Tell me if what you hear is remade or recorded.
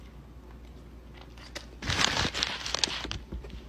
recorded